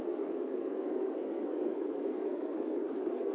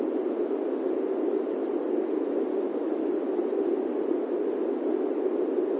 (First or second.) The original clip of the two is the second